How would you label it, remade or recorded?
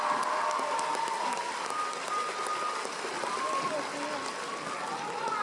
recorded